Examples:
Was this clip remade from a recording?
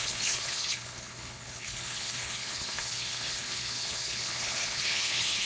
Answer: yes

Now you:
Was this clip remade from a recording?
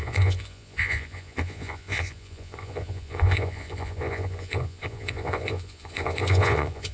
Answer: yes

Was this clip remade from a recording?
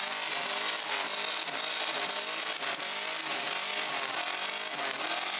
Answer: no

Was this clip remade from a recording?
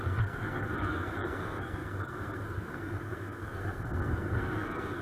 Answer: yes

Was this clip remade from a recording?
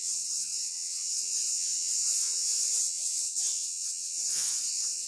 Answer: yes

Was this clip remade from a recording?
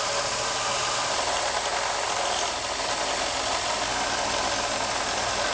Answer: no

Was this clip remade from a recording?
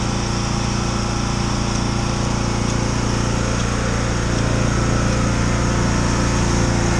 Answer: no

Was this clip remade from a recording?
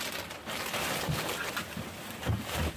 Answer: no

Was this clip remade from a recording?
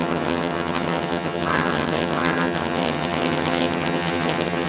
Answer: yes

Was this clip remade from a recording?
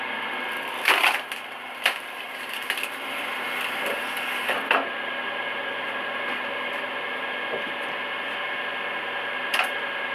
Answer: yes